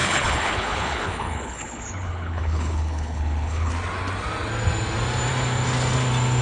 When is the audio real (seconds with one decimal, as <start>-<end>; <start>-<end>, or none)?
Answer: 3.7-6.4